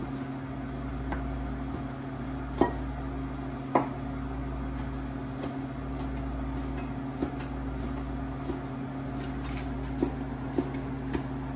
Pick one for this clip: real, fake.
real